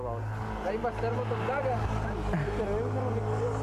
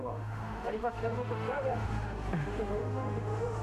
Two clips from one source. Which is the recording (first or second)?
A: first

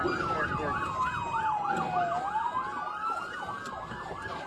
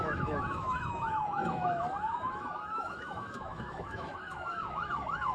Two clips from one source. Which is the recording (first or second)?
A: first